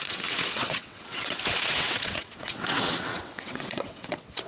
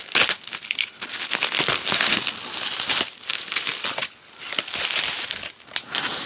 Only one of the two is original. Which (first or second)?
second